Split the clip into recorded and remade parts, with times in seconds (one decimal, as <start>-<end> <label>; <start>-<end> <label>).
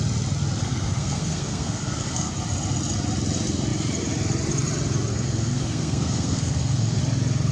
0.0-0.6 recorded; 0.6-2.3 remade; 2.3-5.1 recorded; 5.1-7.0 remade; 7.0-7.5 recorded